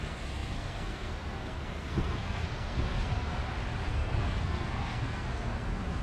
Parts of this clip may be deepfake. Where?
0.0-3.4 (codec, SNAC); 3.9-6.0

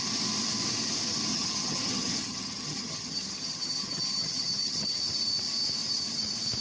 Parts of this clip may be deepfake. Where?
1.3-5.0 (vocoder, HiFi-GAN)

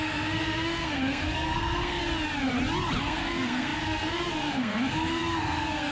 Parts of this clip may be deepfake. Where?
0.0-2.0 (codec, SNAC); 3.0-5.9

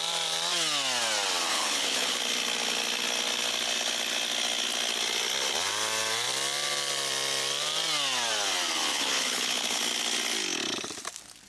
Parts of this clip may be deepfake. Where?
1.5-2.2 (codec, HILCodec); 8.9-9.8

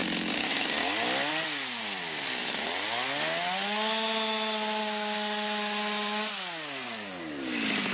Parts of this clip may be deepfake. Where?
none

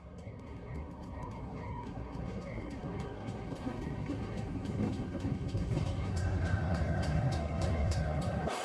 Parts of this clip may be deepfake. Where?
0.0-8.6 (codec, SNAC)